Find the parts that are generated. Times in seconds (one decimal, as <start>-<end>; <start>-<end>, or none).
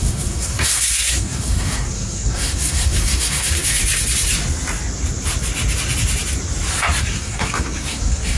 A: 0.0-3.8; 7.0-8.4